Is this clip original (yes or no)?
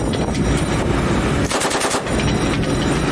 yes